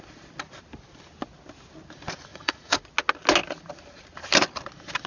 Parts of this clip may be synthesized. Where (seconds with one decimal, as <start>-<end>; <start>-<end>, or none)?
2.3-2.8